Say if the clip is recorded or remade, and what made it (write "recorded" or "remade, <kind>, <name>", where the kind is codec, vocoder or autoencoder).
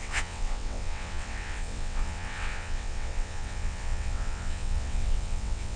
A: remade, vocoder, WaveNeXt